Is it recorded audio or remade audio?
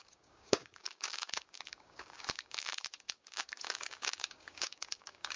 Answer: remade